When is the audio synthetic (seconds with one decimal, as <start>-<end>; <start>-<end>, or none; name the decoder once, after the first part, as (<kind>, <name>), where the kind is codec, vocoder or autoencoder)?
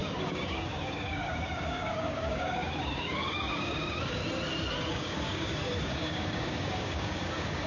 0.0-4.2 (codec, DAC); 4.9-7.7